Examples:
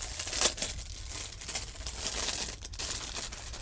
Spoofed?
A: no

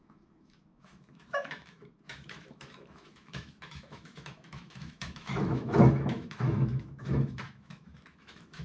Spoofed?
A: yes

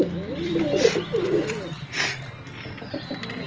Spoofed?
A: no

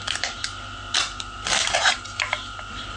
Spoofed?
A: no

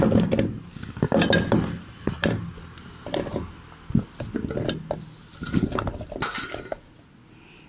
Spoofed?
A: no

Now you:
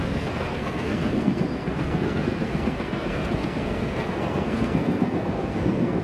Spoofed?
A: yes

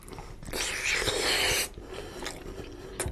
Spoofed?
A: no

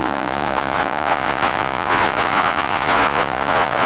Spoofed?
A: yes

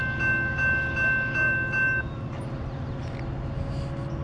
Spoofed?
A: no